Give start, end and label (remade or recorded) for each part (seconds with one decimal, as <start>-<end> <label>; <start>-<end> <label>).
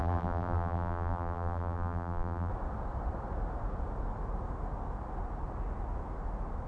0.0-2.5 remade; 2.5-6.7 recorded